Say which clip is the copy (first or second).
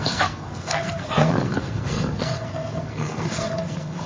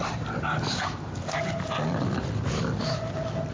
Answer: first